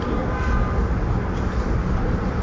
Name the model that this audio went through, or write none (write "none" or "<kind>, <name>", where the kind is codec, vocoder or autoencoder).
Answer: none